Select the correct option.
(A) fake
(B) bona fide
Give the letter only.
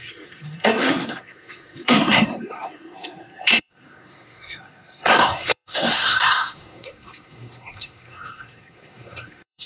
A